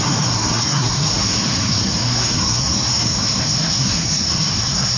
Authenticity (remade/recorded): remade